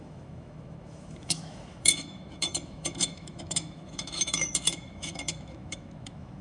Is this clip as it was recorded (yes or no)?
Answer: no